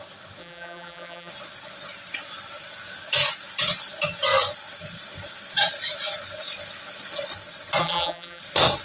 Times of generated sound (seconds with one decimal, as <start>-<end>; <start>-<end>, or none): 0.4-1.3; 7.8-8.4